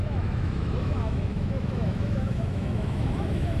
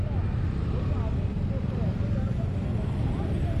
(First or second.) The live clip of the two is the second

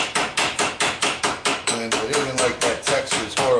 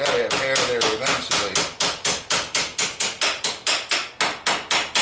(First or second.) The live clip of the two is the second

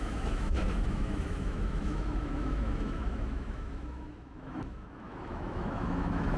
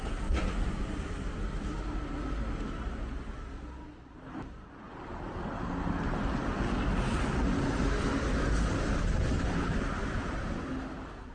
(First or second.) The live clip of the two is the second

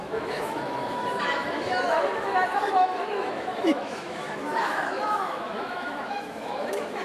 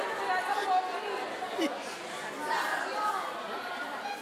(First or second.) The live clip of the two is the second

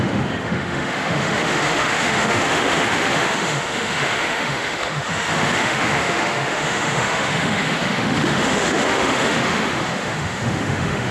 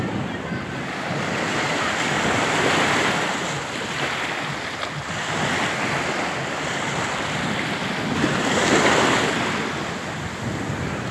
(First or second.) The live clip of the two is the second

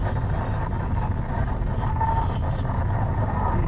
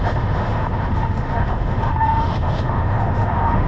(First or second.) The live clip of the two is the first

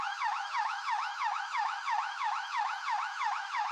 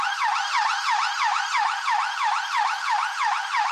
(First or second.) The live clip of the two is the second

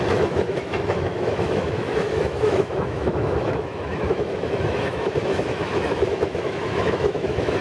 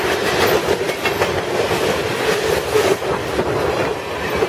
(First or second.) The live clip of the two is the second